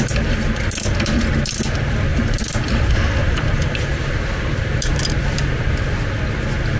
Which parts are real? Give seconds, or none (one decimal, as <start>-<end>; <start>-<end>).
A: 0.0-2.1; 5.8-6.8